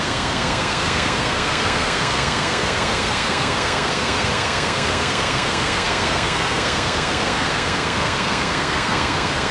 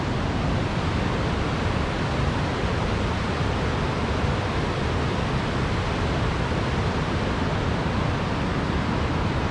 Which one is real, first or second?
second